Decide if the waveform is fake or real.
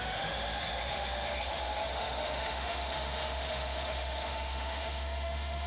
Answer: fake